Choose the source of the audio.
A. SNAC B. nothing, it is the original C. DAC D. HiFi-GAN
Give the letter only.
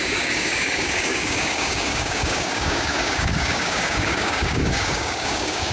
C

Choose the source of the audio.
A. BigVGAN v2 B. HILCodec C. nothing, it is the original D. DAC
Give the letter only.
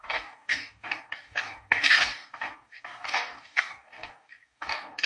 D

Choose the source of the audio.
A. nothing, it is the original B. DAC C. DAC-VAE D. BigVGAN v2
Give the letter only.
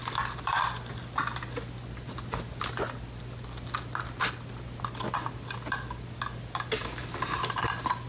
A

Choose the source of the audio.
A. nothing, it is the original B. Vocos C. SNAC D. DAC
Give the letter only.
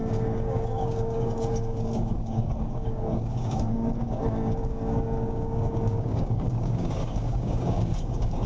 D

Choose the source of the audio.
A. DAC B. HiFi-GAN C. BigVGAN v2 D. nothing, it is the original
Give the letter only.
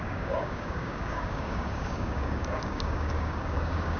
A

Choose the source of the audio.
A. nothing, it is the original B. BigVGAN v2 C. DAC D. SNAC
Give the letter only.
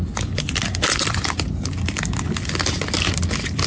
A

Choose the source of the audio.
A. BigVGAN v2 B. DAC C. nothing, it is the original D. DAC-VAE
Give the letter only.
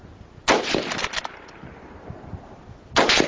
C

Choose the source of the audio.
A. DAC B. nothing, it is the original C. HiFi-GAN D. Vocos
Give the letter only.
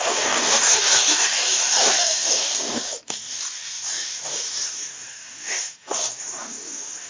A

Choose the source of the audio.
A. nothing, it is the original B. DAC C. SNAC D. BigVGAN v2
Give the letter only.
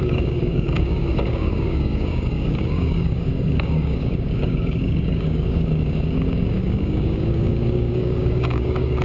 B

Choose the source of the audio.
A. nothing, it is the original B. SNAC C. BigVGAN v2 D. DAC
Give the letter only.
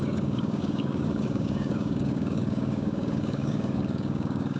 D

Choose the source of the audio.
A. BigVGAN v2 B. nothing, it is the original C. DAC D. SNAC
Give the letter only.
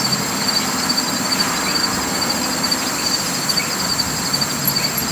B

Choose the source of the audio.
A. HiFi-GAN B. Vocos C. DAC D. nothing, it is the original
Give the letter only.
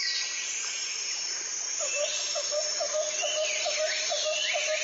D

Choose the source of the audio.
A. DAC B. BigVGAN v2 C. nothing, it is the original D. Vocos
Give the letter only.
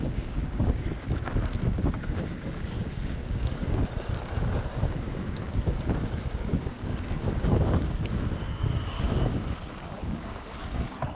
A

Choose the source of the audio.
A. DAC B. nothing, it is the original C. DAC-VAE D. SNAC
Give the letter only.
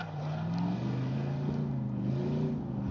B